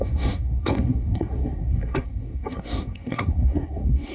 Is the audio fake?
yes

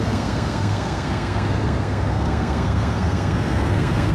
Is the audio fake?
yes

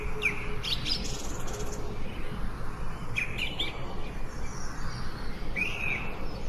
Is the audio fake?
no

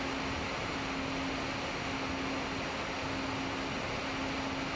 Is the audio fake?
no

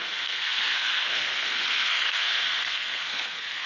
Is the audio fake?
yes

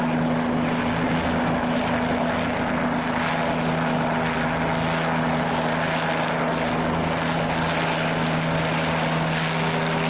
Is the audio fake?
no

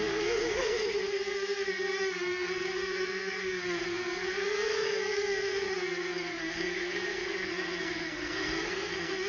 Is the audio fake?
yes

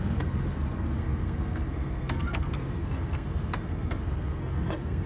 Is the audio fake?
yes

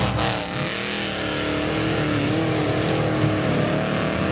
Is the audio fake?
no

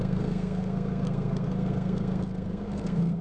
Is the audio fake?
yes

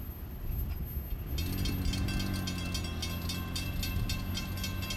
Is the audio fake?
no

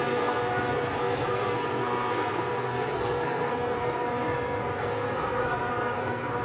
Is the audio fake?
yes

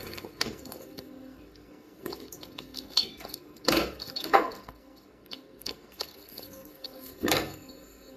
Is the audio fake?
yes